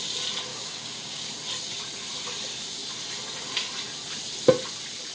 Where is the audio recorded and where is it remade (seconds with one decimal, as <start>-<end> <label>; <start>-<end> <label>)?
0.0-0.5 recorded; 0.5-1.3 remade; 1.3-5.1 recorded